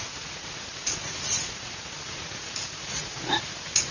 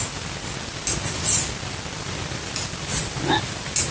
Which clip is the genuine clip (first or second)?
second